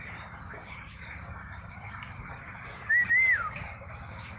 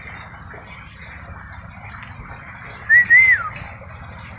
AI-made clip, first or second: first